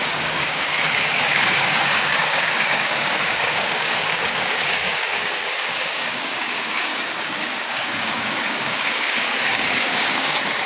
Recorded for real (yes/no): no